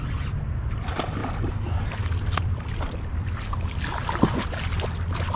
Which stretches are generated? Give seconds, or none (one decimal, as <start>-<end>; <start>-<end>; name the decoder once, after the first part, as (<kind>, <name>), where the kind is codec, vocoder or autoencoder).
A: none